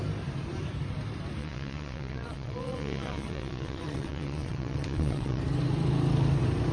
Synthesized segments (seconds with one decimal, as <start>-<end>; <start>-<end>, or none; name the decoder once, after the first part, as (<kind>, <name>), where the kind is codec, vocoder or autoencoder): 1.4-5.4 (vocoder, WaveNeXt)